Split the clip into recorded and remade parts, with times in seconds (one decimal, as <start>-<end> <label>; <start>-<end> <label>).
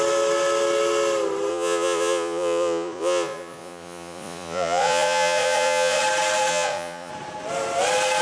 0.0-1.5 recorded; 1.5-6.0 remade; 6.0-6.5 recorded; 6.5-7.1 remade; 7.1-8.2 recorded